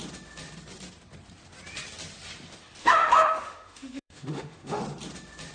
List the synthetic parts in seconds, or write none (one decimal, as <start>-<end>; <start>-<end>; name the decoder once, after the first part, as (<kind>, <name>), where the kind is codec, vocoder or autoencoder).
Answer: 2.8-4.8 (autoencoder, DAC-VAE)